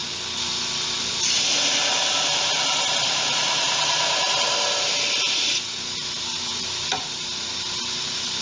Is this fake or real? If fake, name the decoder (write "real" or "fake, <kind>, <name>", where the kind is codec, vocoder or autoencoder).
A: real